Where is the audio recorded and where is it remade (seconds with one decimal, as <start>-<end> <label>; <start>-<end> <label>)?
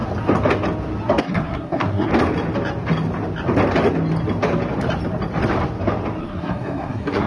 0.0-1.2 recorded; 1.2-2.1 remade; 2.1-6.2 recorded; 6.2-7.3 remade